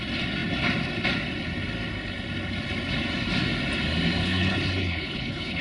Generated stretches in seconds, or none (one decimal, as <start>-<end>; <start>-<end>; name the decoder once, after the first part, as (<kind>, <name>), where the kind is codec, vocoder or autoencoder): 4.2-5.6 (codec, HILCodec)